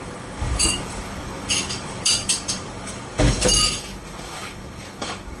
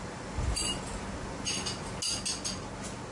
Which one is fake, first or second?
first